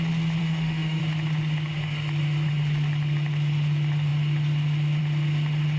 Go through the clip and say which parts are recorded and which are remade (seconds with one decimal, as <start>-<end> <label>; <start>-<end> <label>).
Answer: 0.0-0.4 recorded; 0.4-1.0 remade; 1.0-5.8 recorded